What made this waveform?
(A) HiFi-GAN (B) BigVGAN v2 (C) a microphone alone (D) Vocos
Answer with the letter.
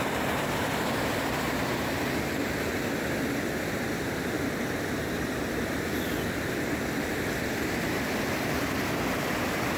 B